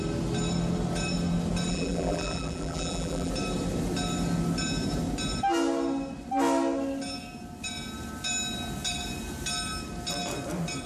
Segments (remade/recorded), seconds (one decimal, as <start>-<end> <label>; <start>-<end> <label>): 0.0-1.7 recorded; 1.7-3.3 remade; 3.3-10.9 recorded